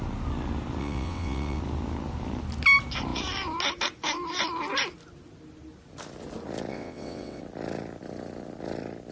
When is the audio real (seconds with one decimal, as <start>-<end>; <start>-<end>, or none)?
0.0-0.8; 1.6-6.7; 7.4-9.1